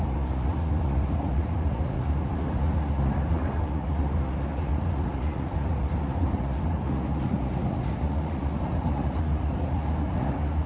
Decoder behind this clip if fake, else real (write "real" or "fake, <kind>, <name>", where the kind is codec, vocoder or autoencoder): fake, vocoder, Vocos